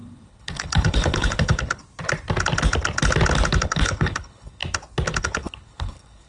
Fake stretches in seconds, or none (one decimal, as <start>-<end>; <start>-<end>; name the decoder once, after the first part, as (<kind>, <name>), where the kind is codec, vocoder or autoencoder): 0.0-1.8 (codec, HILCodec); 3.6-4.6; 5.2-6.3